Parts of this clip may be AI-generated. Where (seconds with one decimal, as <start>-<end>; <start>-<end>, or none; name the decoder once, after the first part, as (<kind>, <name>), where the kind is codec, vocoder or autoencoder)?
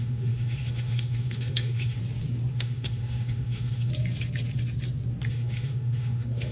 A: 0.0-2.0 (autoencoder, DAC-VAE); 2.5-3.9; 5.3-6.5